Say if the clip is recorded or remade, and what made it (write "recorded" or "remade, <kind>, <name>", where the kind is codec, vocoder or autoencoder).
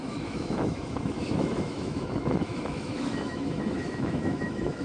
remade, autoencoder, DAC-VAE